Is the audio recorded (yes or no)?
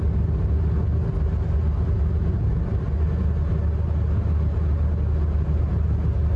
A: yes